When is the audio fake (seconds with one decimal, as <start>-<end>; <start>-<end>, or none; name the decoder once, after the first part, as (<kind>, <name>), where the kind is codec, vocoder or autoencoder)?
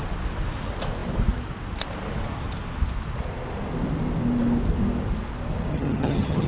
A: 5.7-6.5 (vocoder, HiFi-GAN)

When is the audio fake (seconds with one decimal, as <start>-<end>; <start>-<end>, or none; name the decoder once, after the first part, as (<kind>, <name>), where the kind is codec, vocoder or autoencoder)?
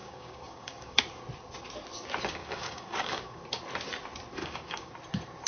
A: 0.0-1.0 (codec, DAC); 2.4-3.4; 4.4-4.9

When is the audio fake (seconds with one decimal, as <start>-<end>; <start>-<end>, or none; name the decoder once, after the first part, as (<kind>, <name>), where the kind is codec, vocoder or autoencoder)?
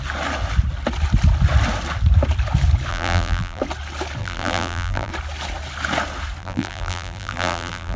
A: 2.9-3.6 (vocoder, BigVGAN v2); 4.2-5.1; 6.4-8.0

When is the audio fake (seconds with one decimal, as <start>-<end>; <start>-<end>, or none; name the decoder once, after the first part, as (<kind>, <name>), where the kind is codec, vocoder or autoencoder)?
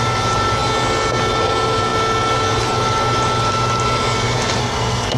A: 4.6-5.2 (codec, SNAC)